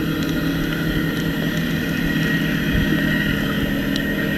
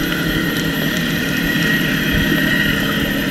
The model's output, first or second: second